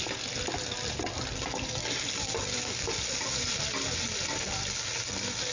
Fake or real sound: real